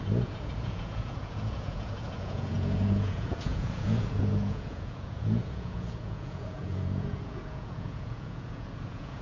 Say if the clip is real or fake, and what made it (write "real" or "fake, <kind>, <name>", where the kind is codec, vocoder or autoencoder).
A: fake, vocoder, Vocos